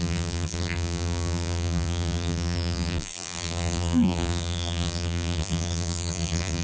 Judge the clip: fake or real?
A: fake